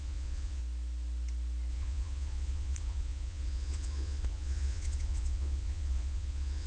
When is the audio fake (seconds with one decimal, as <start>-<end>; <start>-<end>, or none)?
0.0-0.6; 1.7-6.7